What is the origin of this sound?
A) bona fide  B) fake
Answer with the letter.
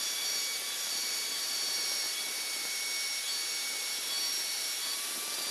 B